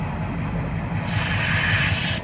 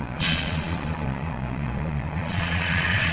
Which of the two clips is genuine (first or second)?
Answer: first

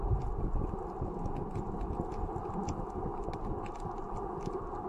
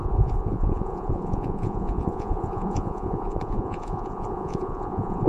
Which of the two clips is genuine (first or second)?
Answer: first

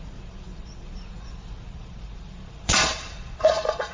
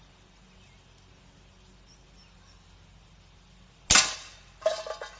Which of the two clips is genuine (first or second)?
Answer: second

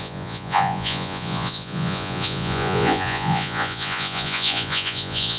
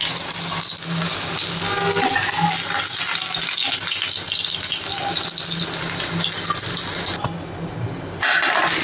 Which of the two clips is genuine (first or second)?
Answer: second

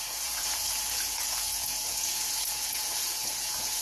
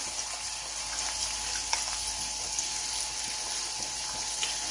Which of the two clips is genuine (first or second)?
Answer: second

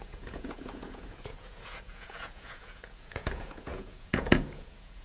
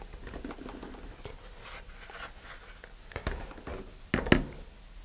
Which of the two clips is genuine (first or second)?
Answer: second